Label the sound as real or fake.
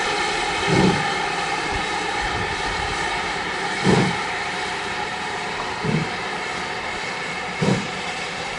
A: fake